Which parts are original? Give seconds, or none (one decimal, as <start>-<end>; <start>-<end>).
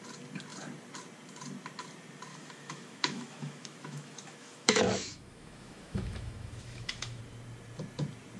0.0-2.3; 7.2-8.4